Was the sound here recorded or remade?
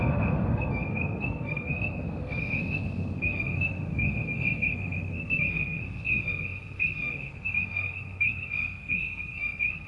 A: remade